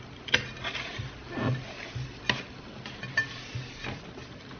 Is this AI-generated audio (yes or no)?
no